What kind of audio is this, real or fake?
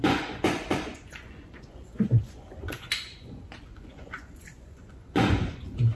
fake